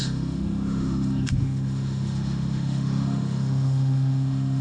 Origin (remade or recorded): remade